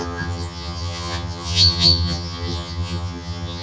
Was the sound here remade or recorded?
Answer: remade